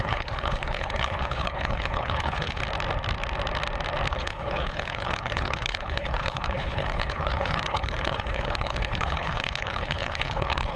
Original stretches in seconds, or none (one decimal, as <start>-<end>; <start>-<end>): 2.6-4.1